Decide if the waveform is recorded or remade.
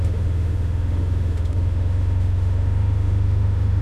remade